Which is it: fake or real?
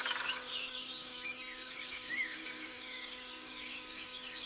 fake